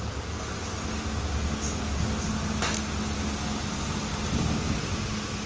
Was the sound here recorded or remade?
recorded